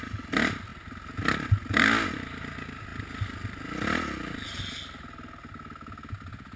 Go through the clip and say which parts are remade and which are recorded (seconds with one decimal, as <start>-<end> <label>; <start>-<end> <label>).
0.0-6.6 recorded